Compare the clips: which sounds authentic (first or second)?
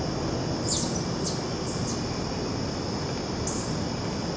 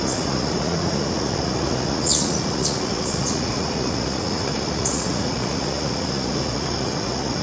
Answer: first